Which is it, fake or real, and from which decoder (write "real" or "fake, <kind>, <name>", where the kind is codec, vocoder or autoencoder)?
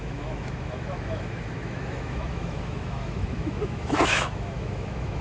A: fake, autoencoder, DAC-VAE